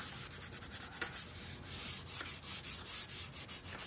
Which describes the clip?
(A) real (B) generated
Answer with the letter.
A